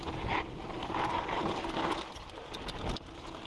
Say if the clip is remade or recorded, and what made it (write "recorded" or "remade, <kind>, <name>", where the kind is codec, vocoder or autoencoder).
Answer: recorded